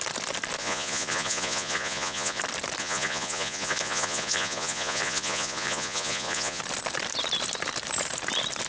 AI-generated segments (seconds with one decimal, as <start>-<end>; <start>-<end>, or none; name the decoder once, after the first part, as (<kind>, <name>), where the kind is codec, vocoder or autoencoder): 0.6-2.4 (vocoder, Vocos); 2.8-6.6